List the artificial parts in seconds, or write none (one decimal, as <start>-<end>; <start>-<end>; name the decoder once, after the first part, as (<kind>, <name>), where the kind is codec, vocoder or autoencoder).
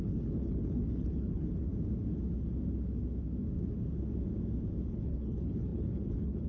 0.0-1.7 (codec, HILCodec); 4.9-6.5